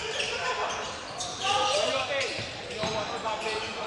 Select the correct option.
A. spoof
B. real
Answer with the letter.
B